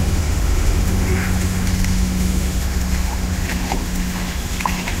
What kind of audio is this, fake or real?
fake